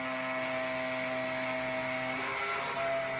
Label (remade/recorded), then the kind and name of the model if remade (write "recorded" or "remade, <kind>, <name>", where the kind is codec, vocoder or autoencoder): recorded